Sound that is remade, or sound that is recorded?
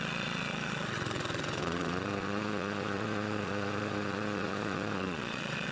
remade